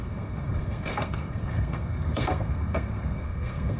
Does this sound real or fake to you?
fake